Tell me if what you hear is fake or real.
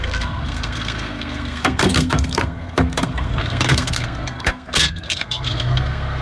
fake